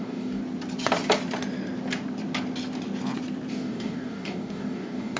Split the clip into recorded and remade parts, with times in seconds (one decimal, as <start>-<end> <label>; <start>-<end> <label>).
0.0-0.4 remade; 0.4-3.5 recorded; 3.5-5.2 remade